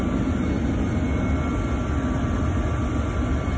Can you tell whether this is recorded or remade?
recorded